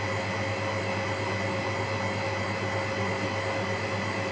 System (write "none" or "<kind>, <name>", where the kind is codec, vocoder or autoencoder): none